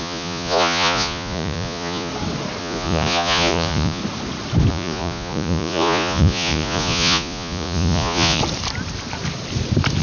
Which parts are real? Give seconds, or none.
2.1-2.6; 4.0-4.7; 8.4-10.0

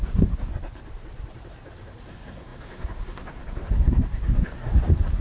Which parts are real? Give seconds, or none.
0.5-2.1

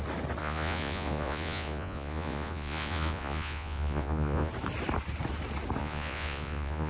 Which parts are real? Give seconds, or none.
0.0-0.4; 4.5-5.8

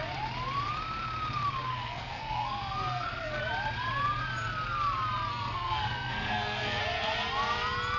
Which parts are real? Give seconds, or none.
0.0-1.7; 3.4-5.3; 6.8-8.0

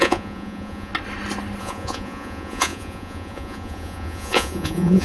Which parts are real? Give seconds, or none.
0.9-1.6